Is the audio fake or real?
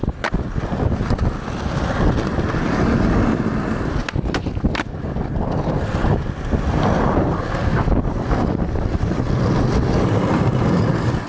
fake